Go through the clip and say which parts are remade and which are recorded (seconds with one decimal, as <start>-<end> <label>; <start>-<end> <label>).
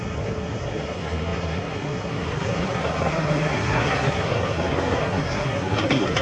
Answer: 0.0-6.2 remade